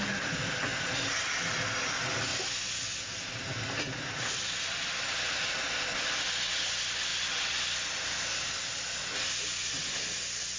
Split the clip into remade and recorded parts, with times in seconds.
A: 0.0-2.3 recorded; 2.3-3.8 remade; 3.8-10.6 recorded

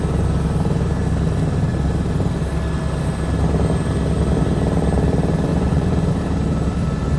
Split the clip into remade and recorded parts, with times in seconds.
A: 0.0-5.5 recorded; 5.5-6.1 remade; 6.1-7.2 recorded

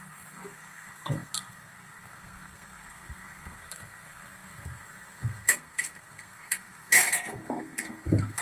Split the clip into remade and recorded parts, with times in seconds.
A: 0.0-8.4 remade

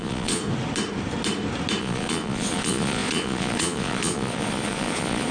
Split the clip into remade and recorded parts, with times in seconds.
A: 0.0-0.4 remade; 0.4-1.8 recorded; 1.8-5.3 remade

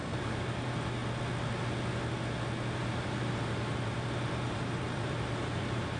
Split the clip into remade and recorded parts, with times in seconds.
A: 0.0-1.0 remade; 1.0-2.8 recorded; 2.8-6.0 remade